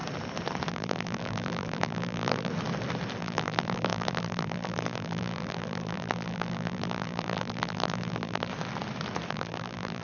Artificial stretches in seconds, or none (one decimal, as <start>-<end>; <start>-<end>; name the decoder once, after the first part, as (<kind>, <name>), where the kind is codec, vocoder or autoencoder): 0.7-2.5 (vocoder, BigVGAN v2); 3.2-8.5; 9.3-10.0